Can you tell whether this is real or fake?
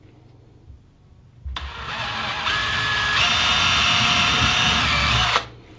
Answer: real